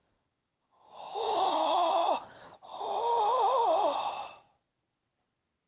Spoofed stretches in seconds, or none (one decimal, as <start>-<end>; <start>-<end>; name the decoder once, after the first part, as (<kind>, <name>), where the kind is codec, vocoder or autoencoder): 0.0-2.2 (codec, DAC)